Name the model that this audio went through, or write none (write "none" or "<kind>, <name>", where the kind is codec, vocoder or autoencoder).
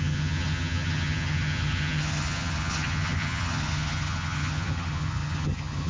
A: vocoder, HiFi-GAN